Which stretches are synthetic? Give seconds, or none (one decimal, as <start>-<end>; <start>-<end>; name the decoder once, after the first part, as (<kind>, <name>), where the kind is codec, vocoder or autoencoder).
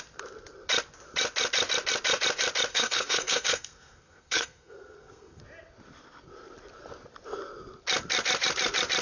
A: 2.7-5.4 (codec, SNAC)